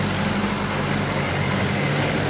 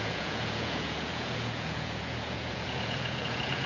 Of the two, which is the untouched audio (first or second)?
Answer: first